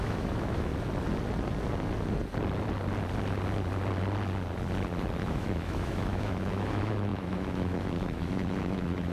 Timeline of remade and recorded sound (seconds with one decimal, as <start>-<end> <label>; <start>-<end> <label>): 0.0-0.7 remade; 0.7-5.3 recorded; 5.3-9.1 remade